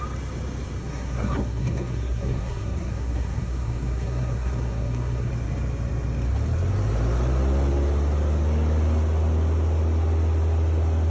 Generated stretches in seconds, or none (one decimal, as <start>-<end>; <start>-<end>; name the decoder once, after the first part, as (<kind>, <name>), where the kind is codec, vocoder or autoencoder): 0.8-5.3 (codec, SNAC)

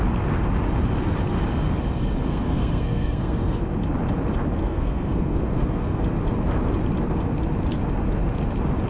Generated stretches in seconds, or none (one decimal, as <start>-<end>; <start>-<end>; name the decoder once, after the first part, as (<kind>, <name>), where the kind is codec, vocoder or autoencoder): 2.3-3.6 (codec, SNAC); 4.6-6.0

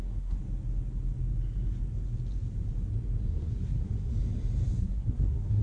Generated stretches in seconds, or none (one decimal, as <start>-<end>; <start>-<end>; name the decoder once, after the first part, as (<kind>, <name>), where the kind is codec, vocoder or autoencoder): 0.0-0.4 (codec, SNAC); 3.3-4.1; 4.8-5.6